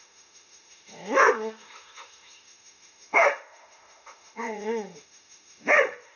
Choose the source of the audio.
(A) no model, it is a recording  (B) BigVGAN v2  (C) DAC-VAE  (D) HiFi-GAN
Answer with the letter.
C